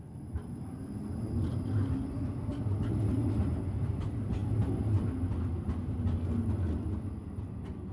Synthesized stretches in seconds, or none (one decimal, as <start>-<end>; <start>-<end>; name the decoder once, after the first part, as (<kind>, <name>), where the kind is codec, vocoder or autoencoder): none